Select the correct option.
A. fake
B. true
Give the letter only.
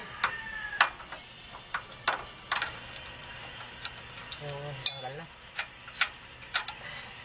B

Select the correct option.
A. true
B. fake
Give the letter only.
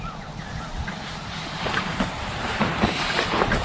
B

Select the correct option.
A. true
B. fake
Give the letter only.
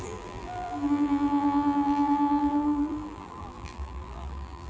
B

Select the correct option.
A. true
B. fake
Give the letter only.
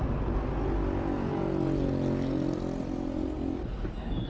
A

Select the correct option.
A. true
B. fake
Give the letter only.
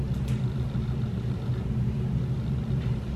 A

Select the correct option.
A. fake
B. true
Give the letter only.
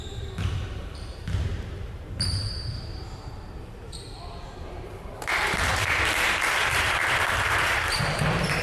A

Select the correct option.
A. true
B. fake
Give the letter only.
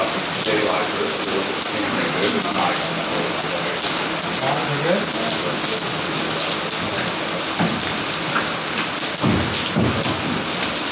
A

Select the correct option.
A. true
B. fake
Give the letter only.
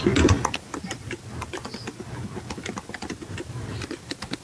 A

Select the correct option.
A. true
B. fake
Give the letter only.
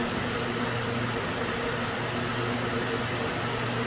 A